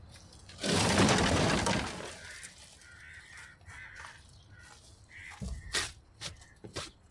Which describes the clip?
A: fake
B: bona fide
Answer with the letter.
B